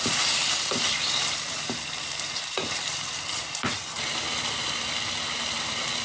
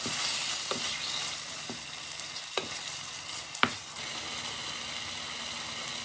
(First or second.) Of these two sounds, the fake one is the first